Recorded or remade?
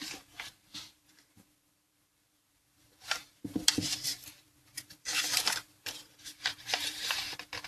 remade